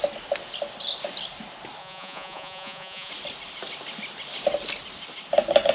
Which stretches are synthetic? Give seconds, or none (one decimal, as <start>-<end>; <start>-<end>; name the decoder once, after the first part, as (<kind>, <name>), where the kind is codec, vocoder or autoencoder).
1.8-3.1 (vocoder, Vocos)